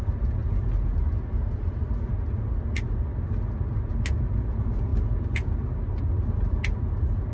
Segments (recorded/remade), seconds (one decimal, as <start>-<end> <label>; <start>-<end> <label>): 0.0-7.3 recorded